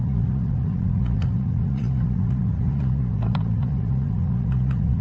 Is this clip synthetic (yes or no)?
yes